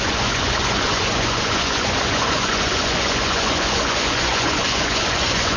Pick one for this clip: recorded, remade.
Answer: remade